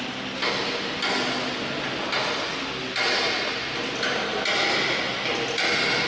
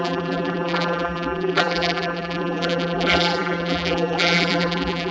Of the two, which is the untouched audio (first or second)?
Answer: first